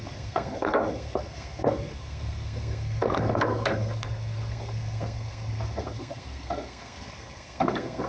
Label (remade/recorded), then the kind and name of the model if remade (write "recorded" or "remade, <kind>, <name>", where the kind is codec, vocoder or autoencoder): remade, codec, SNAC